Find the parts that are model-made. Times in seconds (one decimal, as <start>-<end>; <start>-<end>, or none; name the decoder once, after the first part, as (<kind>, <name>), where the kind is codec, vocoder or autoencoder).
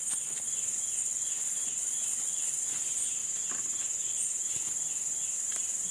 1.0-2.7 (vocoder, Vocos)